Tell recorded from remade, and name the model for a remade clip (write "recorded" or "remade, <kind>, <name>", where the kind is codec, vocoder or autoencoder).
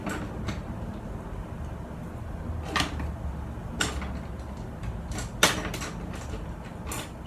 recorded